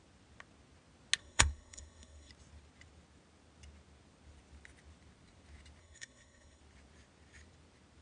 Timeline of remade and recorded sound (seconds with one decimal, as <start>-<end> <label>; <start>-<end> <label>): 0.0-1.2 recorded; 1.2-2.3 remade; 2.3-5.8 recorded; 5.8-6.6 remade; 6.6-8.0 recorded